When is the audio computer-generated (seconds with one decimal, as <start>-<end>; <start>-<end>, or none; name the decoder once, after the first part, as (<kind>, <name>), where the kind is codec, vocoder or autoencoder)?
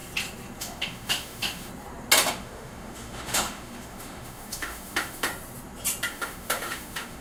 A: 0.6-1.7 (autoencoder, DAC-VAE); 2.3-5.3; 6.1-7.2